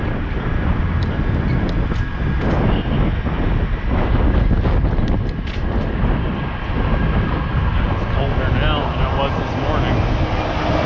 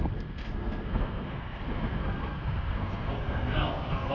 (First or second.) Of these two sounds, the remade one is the second